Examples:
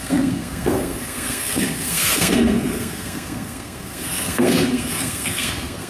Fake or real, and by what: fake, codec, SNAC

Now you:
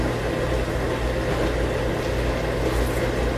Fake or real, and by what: real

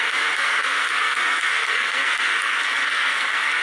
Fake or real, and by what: fake, codec, SNAC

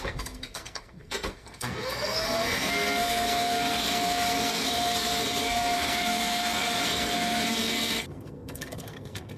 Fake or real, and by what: fake, codec, SNAC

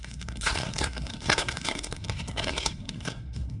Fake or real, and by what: fake, codec, SNAC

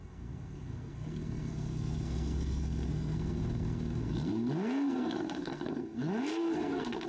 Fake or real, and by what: fake, codec, SNAC